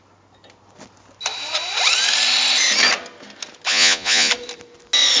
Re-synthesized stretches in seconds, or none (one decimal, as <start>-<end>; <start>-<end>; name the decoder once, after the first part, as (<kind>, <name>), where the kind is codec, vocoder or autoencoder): 3.7-4.3 (vocoder, Vocos)